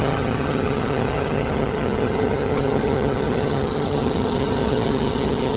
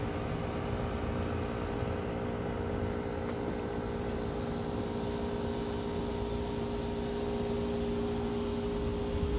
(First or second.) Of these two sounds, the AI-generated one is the first